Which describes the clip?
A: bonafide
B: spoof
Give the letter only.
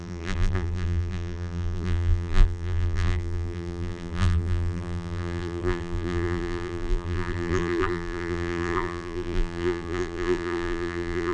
B